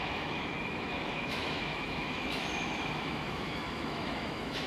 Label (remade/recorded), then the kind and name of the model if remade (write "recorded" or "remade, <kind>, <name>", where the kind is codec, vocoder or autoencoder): remade, autoencoder, DAC-VAE